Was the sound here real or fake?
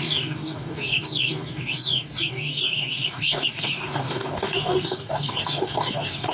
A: fake